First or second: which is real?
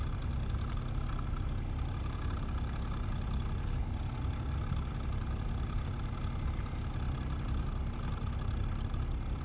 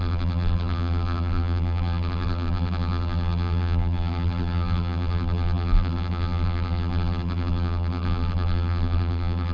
first